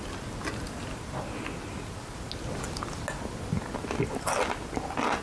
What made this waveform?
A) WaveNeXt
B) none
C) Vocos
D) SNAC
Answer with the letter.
B